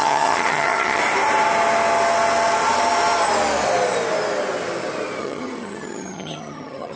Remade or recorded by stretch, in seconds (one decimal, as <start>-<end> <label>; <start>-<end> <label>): 0.0-1.0 remade; 1.0-5.2 recorded; 5.2-7.0 remade